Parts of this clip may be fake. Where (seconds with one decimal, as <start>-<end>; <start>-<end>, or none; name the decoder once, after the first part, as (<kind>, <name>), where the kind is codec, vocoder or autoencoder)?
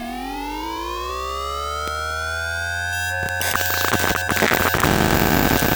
0.0-1.1 (vocoder, BigVGAN v2)